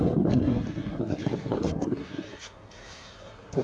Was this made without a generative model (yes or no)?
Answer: no